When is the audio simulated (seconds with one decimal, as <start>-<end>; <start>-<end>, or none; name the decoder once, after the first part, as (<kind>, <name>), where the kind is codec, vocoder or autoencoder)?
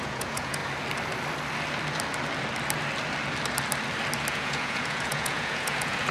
0.0-0.6 (vocoder, Vocos); 4.3-6.1